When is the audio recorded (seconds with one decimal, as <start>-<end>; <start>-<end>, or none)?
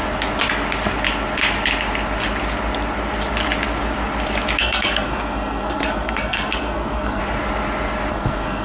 0.0-4.6; 7.2-8.1